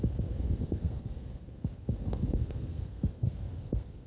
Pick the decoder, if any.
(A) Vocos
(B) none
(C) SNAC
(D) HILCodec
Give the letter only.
C